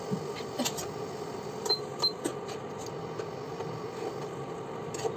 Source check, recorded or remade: recorded